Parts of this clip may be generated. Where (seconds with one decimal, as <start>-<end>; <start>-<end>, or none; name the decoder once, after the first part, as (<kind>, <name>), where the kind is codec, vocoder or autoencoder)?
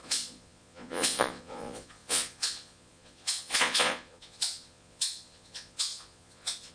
0.0-6.7 (vocoder, Vocos)